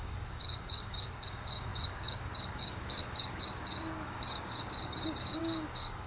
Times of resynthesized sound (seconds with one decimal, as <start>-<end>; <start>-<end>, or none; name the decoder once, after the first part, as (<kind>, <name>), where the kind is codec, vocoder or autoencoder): 0.0-6.1 (codec, DAC)